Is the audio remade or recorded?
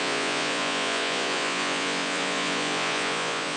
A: remade